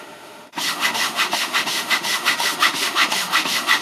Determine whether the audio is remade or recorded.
remade